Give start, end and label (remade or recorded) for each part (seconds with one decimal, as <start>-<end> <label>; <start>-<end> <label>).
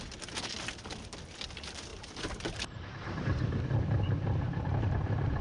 0.0-1.9 recorded; 1.9-5.4 remade